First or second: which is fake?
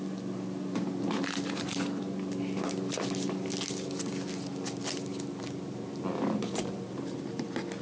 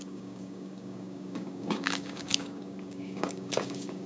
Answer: second